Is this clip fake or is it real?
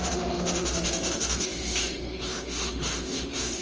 fake